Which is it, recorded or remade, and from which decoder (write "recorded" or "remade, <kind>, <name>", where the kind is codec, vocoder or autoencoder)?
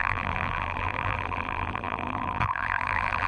remade, vocoder, BigVGAN v2